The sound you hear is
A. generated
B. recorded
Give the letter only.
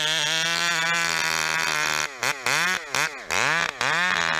B